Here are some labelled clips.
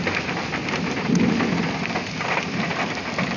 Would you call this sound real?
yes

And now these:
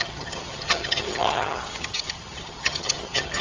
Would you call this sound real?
no